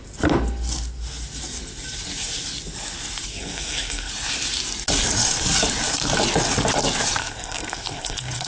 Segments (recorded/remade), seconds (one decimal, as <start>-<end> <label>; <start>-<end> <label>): 0.0-3.3 recorded; 3.3-4.1 remade; 4.1-7.2 recorded; 7.2-8.5 remade